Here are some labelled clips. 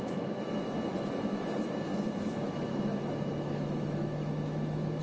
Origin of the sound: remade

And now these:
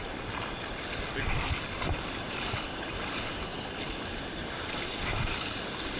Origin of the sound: recorded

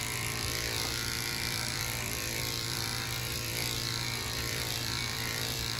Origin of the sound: remade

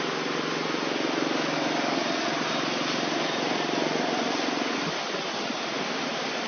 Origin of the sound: recorded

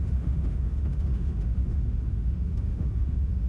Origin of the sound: remade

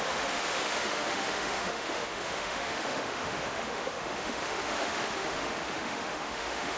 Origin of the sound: remade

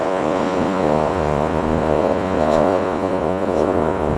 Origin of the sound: remade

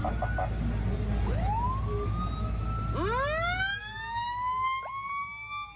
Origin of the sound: recorded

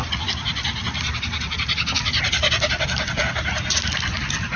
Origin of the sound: recorded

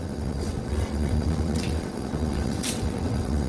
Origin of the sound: remade